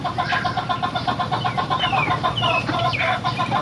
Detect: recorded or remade remade